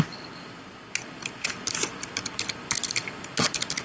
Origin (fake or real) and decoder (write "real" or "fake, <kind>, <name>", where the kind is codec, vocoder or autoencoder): real